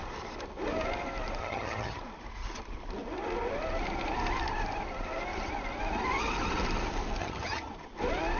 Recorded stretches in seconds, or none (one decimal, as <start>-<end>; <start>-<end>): 0.0-1.4; 2.0-7.2; 7.7-8.4